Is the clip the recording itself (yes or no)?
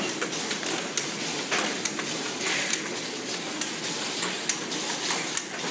yes